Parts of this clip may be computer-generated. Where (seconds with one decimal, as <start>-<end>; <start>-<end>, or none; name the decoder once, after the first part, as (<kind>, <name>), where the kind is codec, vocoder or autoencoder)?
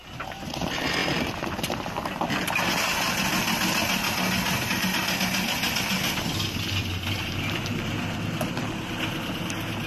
none